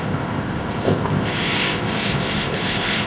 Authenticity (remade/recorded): remade